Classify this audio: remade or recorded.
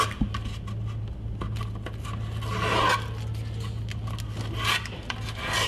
recorded